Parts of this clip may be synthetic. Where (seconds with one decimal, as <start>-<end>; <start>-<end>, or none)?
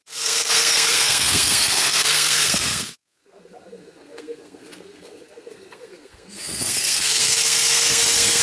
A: 0.0-8.4